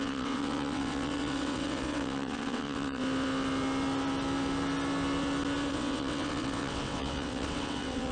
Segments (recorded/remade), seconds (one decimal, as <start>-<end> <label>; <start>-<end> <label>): 0.0-3.0 remade; 3.0-5.7 recorded; 5.7-8.1 remade